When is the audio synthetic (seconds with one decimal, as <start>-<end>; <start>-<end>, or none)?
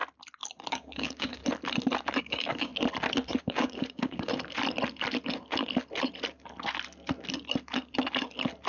0.7-1.4; 2.2-2.7; 3.4-4.3